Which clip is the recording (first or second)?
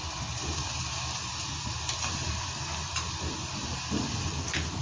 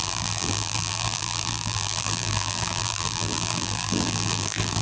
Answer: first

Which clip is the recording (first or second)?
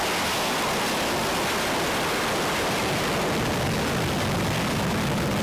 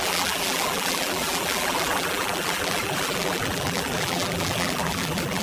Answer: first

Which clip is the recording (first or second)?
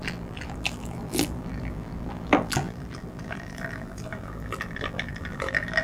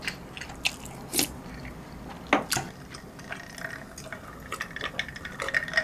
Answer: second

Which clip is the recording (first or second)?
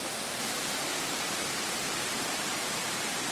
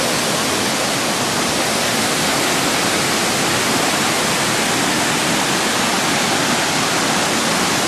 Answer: second